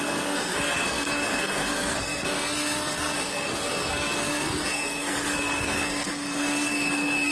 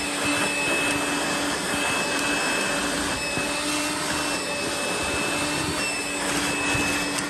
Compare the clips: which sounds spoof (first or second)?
first